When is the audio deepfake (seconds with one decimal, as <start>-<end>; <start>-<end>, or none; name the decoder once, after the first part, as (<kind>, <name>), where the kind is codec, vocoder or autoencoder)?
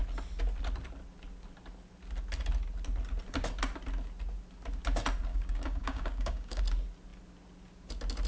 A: 5.3-6.6 (codec, DAC)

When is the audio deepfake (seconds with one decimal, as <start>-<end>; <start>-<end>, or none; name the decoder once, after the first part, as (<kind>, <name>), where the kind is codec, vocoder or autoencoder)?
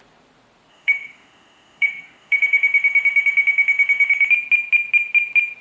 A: 0.7-4.1 (autoencoder, DAC-VAE)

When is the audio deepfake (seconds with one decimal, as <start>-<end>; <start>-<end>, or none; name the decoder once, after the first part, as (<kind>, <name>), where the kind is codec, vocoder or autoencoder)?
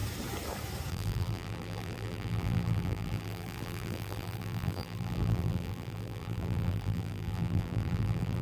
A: 0.9-8.4 (vocoder, BigVGAN v2)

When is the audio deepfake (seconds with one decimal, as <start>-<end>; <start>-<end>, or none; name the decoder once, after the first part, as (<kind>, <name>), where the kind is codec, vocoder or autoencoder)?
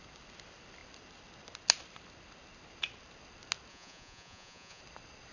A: 3.7-4.8 (vocoder, Vocos)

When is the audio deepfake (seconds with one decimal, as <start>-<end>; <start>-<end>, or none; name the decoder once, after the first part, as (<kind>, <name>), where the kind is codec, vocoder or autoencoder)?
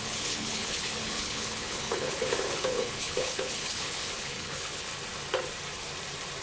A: 0.0-4.9 (codec, HILCodec)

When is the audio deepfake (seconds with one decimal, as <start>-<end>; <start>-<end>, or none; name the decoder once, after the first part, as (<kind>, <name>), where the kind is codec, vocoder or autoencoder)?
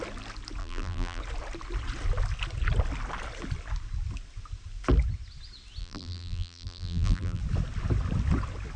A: 0.6-1.2 (vocoder, BigVGAN v2); 5.8-7.4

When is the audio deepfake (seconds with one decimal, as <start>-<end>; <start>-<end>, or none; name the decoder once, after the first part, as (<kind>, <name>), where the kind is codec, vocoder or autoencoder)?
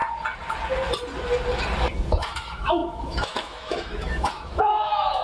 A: 2.1-5.2 (autoencoder, DAC-VAE)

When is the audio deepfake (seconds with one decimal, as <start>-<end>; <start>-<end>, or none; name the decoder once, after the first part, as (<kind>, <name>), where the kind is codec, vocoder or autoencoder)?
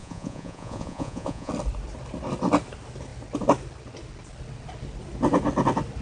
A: 0.0-1.5 (vocoder, Vocos)